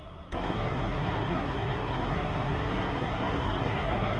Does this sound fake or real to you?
fake